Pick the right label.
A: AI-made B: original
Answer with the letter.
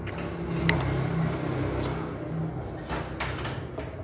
B